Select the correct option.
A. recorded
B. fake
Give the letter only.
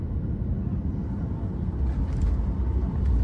A